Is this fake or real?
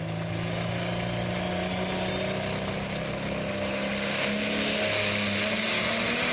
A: real